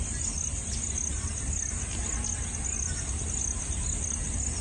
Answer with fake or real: real